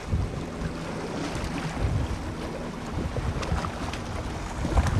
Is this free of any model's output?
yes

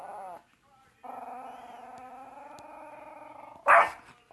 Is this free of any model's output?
yes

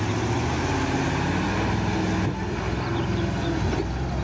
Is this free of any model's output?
yes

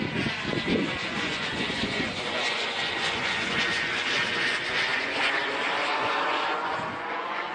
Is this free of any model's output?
no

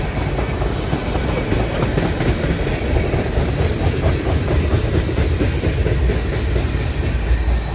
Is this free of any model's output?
yes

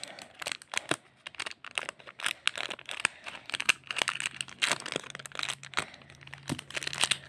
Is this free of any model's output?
yes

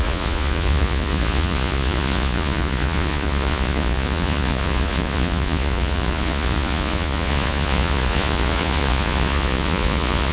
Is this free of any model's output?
no